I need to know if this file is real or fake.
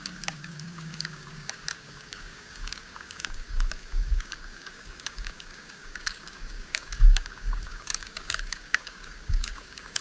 fake